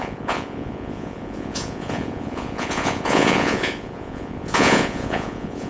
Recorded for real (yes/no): no